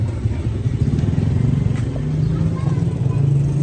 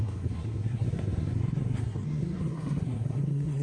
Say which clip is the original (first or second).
first